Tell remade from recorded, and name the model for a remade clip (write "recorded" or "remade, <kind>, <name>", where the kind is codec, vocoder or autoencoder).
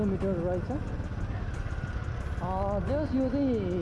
recorded